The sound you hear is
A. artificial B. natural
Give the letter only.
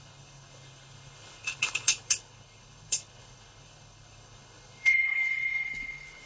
A